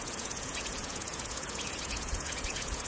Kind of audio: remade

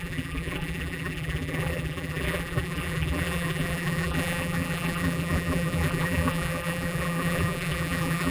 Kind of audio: remade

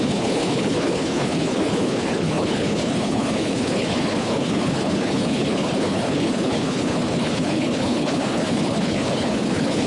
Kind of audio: remade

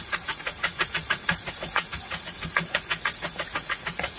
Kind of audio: remade